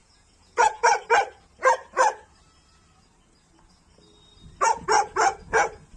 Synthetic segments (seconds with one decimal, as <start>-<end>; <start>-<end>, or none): 0.0-0.9